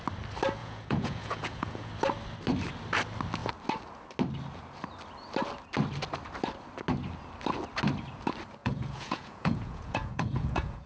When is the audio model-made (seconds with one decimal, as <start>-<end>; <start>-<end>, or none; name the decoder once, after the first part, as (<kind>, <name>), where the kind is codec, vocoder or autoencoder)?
0.6-1.9 (vocoder, Vocos); 8.6-10.9